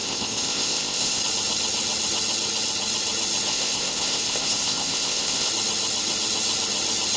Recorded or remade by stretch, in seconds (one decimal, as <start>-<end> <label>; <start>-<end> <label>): 0.0-1.2 remade; 1.2-3.5 recorded; 3.5-5.5 remade; 5.5-7.2 recorded